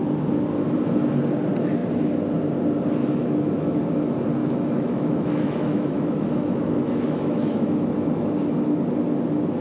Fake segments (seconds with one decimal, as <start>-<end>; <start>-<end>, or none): 3.0-3.8; 4.4-7.9